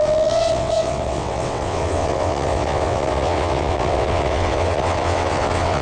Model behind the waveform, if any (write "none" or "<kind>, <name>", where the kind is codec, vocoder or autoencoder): vocoder, WaveNeXt